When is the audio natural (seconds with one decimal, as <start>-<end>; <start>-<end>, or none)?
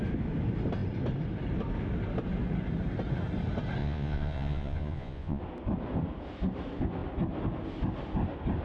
0.0-3.8; 5.4-8.6